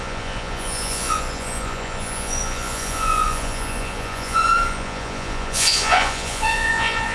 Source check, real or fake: fake